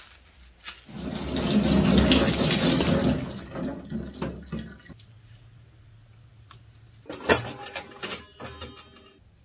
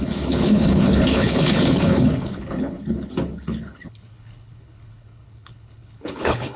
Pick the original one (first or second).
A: first